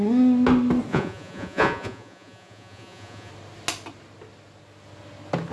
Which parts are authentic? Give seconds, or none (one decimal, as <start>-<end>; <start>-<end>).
0.0-0.9; 3.3-5.5